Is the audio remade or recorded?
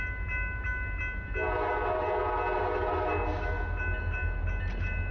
recorded